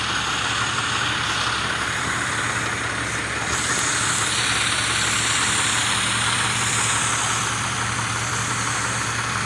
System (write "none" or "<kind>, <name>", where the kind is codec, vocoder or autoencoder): vocoder, BigVGAN v2